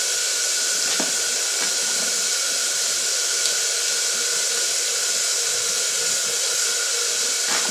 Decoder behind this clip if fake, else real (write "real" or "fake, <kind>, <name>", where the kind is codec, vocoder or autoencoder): real